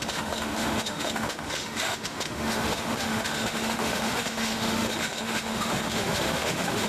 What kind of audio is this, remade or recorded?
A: remade